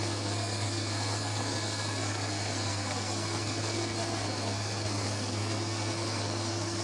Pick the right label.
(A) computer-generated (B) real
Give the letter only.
A